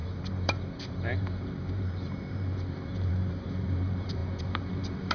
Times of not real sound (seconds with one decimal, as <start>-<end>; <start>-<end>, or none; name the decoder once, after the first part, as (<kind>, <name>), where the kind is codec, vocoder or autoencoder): 0.0-5.1 (vocoder, BigVGAN v2)